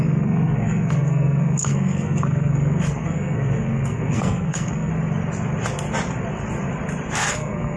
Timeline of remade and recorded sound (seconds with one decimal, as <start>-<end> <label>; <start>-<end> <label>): 0.0-4.9 remade; 4.9-7.3 recorded; 7.3-7.8 remade